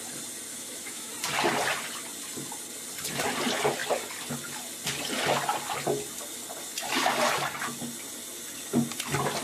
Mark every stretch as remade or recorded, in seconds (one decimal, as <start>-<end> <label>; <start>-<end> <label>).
0.0-0.5 recorded; 0.5-1.1 remade; 1.1-9.4 recorded